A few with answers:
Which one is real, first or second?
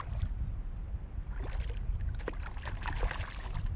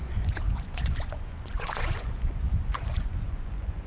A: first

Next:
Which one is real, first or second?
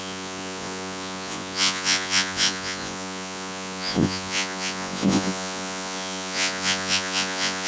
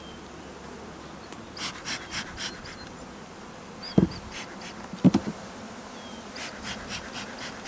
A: second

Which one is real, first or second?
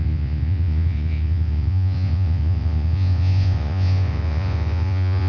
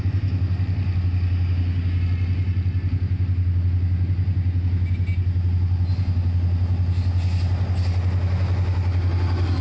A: second